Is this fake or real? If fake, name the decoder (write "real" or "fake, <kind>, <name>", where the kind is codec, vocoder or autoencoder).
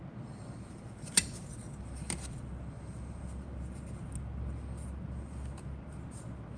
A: real